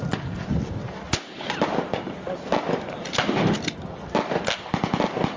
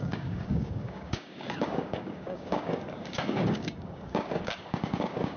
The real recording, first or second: first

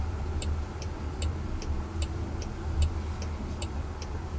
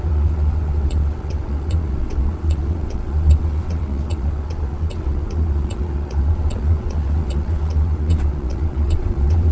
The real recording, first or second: first